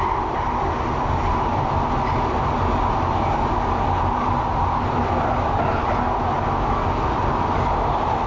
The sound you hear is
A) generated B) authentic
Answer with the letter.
B